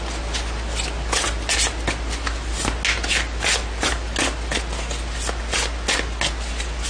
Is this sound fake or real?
real